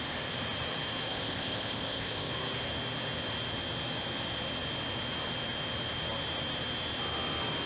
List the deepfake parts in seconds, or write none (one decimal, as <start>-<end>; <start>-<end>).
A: 1.1-2.3